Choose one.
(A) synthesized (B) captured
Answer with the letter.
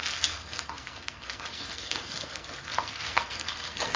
A